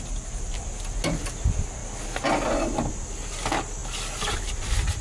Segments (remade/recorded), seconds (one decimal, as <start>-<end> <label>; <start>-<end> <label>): 0.0-5.0 recorded